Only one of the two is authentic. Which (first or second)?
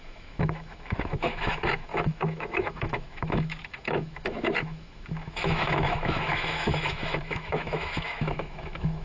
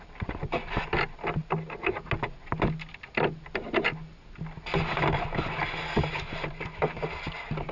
second